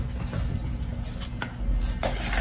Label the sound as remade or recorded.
recorded